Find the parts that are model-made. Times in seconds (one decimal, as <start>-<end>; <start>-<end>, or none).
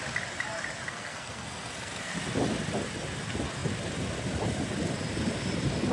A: 0.9-2.1